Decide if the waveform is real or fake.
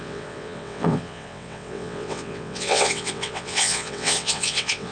fake